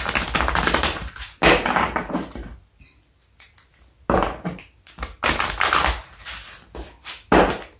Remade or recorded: recorded